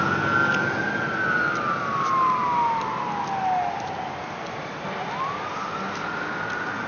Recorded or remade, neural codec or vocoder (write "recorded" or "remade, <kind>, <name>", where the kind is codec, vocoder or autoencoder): recorded